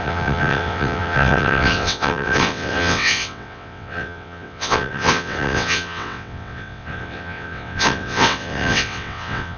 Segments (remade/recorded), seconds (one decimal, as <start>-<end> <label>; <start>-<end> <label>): 0.0-9.6 remade